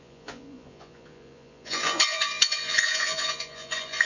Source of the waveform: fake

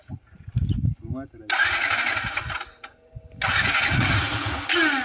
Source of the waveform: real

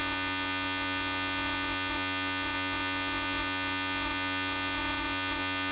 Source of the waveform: fake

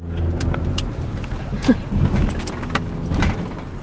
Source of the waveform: real